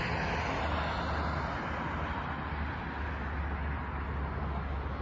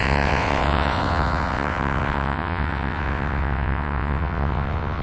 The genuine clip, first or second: first